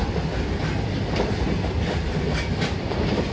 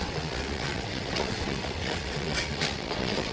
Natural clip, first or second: first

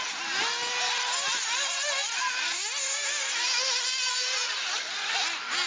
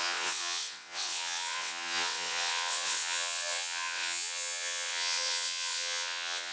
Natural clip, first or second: first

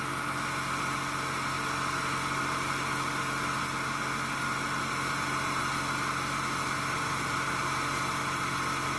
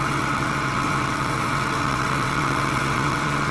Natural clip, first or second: first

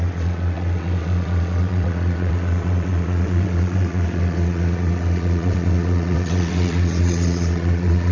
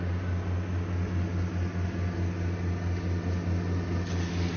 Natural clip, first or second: second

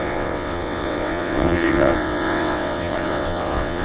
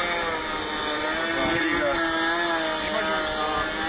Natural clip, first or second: second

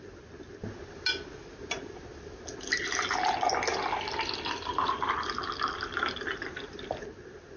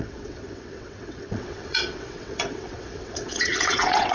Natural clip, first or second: first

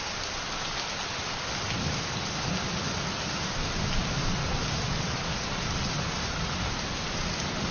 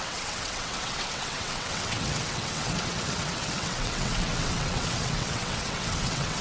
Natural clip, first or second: first